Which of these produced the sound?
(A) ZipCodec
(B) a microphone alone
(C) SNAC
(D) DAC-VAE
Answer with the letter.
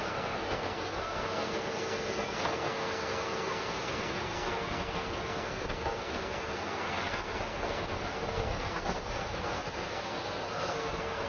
C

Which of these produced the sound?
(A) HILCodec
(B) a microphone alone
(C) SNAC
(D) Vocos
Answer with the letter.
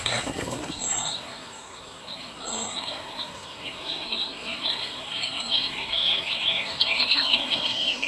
C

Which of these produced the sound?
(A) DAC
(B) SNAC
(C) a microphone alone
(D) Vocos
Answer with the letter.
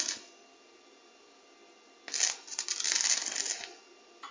C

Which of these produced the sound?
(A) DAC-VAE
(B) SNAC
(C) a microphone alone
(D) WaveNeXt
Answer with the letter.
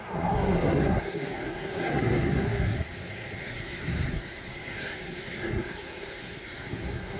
B